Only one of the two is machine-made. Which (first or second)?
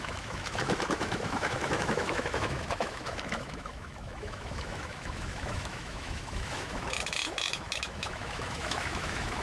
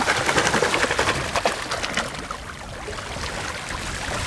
first